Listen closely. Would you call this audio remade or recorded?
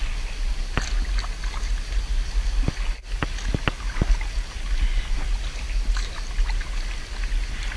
recorded